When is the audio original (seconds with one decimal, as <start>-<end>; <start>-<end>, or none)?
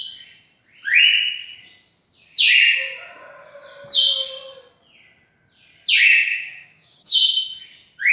0.0-6.3; 7.6-8.1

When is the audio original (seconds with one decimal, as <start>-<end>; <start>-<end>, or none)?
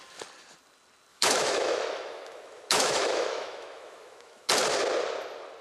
0.0-1.1; 4.5-5.6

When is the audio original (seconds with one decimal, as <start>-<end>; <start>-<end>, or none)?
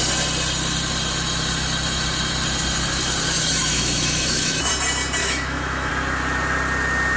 0.0-3.6; 4.7-5.2; 5.9-7.2